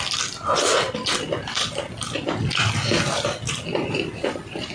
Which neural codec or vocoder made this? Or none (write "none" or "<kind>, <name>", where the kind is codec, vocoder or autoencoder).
none